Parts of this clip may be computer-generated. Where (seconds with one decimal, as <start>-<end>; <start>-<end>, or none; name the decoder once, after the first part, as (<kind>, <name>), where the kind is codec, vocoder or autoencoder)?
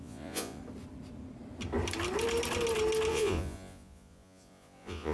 0.0-0.6 (vocoder, Vocos); 3.1-5.1